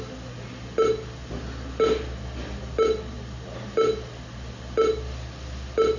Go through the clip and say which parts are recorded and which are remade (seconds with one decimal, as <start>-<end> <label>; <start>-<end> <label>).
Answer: 0.0-6.0 recorded